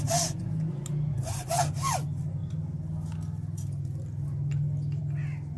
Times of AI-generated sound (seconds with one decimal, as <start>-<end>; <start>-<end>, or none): none